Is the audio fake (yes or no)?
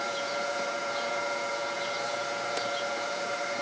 yes